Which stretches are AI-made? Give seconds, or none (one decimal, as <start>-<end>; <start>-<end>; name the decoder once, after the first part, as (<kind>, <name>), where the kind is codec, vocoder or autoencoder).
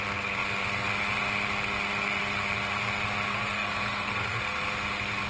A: 3.3-4.4 (codec, SNAC)